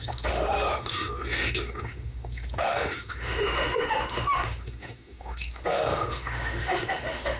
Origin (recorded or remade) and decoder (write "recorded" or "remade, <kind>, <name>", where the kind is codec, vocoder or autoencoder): remade, autoencoder, DAC-VAE